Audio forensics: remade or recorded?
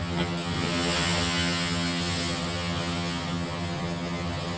remade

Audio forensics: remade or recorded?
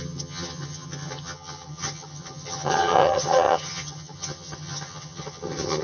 remade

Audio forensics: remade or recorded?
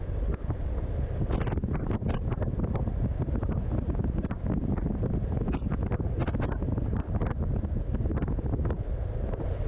recorded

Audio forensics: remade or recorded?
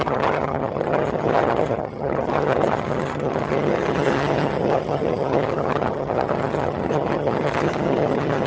remade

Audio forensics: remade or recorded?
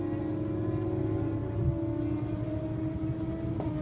recorded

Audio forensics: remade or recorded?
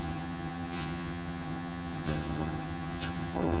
remade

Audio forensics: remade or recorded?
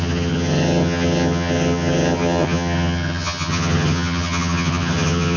remade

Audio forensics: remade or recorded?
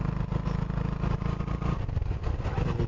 recorded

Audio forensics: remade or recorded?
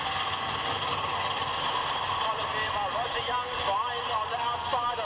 recorded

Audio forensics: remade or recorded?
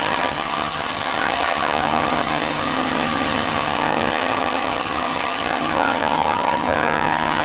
remade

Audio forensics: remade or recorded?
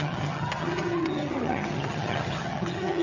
remade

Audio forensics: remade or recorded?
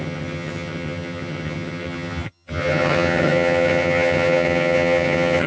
remade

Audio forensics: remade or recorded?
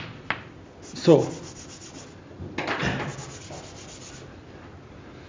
recorded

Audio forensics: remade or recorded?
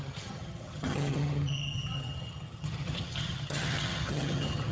remade